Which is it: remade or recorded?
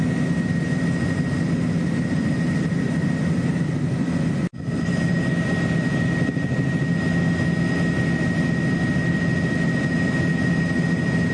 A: recorded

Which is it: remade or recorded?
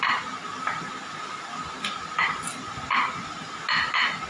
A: recorded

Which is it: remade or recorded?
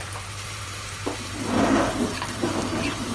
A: remade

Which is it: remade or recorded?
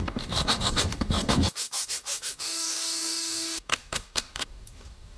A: remade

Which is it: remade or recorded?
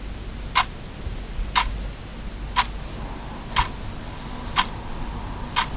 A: recorded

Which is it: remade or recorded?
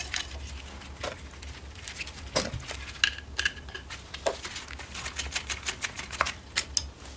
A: recorded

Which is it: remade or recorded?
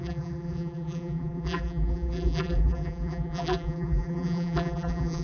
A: remade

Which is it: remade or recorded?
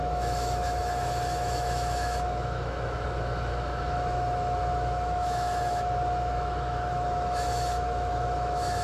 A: remade